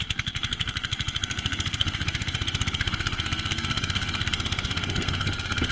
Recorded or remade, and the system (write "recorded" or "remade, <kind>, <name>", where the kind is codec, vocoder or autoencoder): remade, codec, SNAC